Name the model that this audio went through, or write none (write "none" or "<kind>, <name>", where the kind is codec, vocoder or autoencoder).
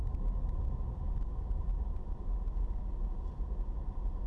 none